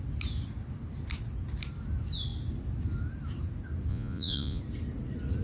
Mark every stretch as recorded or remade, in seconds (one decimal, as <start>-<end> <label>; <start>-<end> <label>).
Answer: 0.0-3.9 recorded; 3.9-4.6 remade; 4.6-5.4 recorded